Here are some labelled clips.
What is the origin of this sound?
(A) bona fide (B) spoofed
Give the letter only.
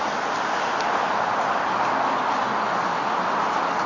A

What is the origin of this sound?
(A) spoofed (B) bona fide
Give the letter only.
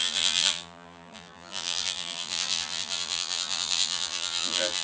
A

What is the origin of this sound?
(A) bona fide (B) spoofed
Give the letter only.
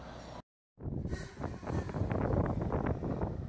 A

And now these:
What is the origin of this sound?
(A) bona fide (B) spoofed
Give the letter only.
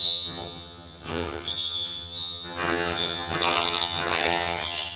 B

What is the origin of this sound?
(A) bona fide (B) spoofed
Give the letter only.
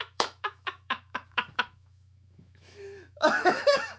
B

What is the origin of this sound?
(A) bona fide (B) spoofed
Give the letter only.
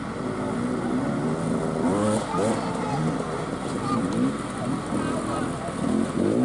A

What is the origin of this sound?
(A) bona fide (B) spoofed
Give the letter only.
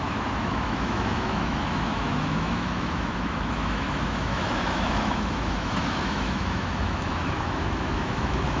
B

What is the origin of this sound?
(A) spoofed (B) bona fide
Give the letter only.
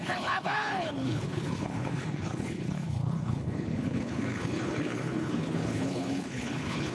A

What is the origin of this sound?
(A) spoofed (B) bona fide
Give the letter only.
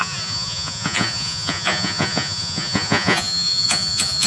A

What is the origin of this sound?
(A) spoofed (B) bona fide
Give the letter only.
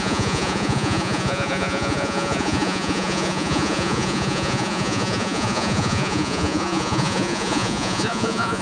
A